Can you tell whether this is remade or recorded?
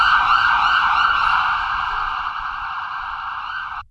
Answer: recorded